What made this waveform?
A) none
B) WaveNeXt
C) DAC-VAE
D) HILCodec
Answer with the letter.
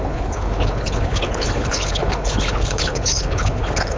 D